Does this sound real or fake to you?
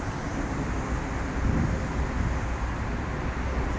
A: real